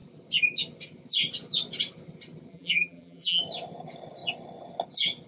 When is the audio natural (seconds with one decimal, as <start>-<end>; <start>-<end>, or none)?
0.0-2.5; 3.4-5.3